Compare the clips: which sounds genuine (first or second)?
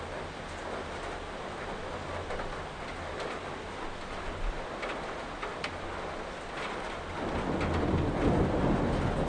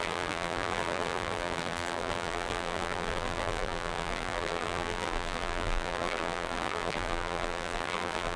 first